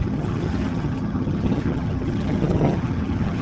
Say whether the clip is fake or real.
fake